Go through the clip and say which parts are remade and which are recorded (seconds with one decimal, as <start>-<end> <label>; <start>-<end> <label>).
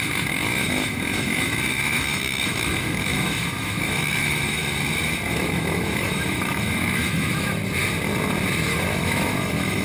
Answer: 0.0-4.6 remade; 4.6-5.3 recorded; 5.3-7.6 remade; 7.6-8.7 recorded; 8.7-9.8 remade